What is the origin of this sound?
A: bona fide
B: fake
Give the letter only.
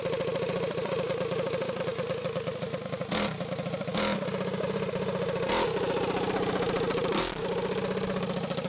A